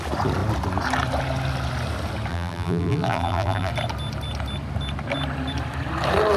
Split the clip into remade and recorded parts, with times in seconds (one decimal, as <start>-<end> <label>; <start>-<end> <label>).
0.0-2.3 recorded; 2.3-3.7 remade; 3.7-6.4 recorded